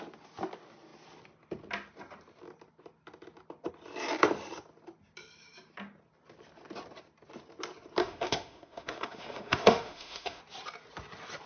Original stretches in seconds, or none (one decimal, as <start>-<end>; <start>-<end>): 0.0-8.0; 10.4-11.5